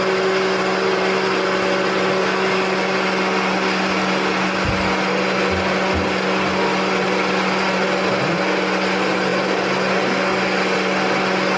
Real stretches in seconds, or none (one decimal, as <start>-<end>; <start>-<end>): 0.0-11.6